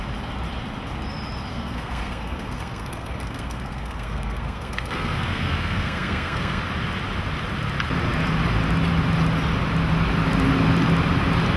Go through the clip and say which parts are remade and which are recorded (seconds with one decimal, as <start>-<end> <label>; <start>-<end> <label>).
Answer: 0.0-1.5 recorded; 1.5-6.6 remade; 6.6-11.6 recorded